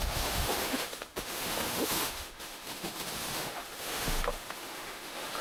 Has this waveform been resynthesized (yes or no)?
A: yes